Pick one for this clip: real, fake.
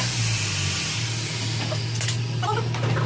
real